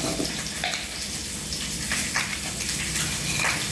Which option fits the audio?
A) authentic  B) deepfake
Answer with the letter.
A